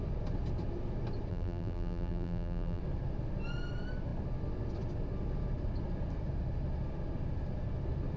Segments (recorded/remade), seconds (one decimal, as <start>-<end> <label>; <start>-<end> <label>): 0.0-1.3 recorded; 1.3-2.8 remade; 2.8-8.2 recorded